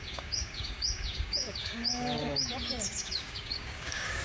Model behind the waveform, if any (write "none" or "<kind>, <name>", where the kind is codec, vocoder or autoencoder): codec, DAC